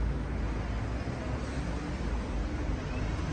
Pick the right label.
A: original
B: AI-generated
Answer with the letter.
A